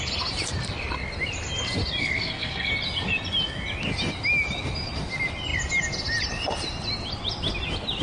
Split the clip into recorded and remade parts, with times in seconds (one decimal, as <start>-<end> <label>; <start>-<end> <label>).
0.0-2.0 recorded; 2.0-2.7 remade; 2.7-8.0 recorded